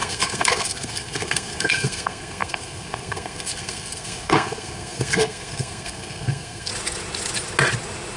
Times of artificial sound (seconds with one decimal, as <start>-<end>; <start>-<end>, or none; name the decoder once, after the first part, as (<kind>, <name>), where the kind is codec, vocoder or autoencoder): 0.0-6.7 (codec, SNAC)